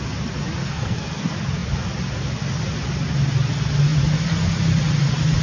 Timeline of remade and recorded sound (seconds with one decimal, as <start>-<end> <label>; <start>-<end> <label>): 0.0-0.6 recorded; 0.6-1.2 remade; 1.2-5.4 recorded